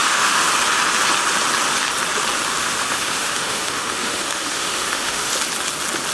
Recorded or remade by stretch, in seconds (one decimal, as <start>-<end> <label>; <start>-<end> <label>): 0.0-0.5 remade; 0.5-2.6 recorded; 2.6-5.3 remade; 5.3-6.1 recorded